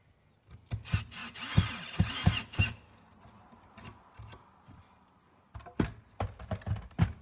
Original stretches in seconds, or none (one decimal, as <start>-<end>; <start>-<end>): 0.0-2.4; 3.1-7.2